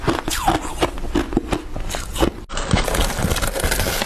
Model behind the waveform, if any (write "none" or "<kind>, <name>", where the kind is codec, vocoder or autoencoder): none